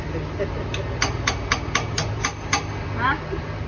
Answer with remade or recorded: recorded